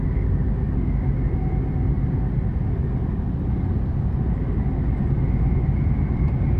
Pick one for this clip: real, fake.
real